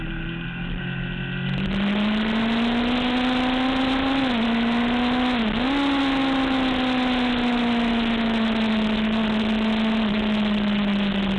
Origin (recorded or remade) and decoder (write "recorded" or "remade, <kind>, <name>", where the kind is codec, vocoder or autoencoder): recorded